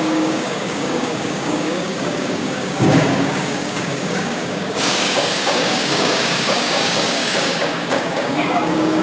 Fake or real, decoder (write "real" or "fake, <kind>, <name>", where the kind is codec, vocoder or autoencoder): fake, codec, DAC